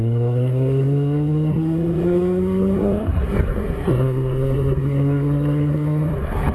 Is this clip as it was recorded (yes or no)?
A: no